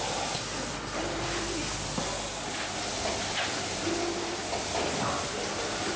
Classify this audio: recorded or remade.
recorded